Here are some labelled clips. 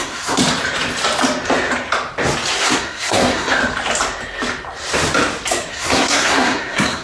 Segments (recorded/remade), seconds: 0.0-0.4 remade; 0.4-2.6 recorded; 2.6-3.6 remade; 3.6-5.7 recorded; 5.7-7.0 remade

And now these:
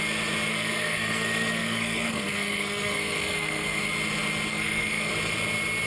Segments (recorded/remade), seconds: 0.0-0.5 recorded; 0.5-3.8 remade; 3.8-4.5 recorded; 4.5-5.1 remade; 5.1-5.9 recorded